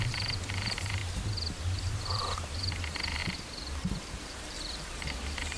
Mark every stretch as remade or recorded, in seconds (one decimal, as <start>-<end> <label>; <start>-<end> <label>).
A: 0.0-1.0 remade; 1.0-1.6 recorded; 1.6-3.2 remade; 3.2-4.2 recorded; 4.2-5.6 remade